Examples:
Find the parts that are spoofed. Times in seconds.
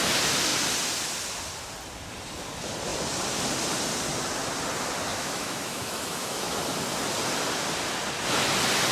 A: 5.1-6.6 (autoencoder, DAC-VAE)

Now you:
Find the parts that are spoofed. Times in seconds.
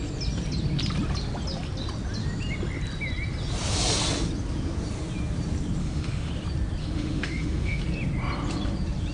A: 5.8-6.3 (autoencoder, DAC-VAE); 6.8-7.8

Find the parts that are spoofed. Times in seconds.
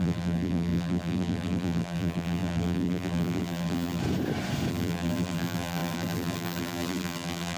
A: 0.0-4.0 (vocoder, BigVGAN v2); 4.7-7.6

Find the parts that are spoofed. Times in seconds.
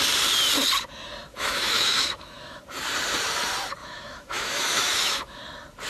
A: 1.3-2.6 (autoencoder, DAC-VAE); 3.8-5.4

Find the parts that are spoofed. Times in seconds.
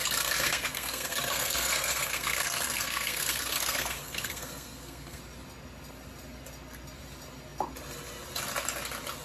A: 0.0-5.2 (codec, SNAC)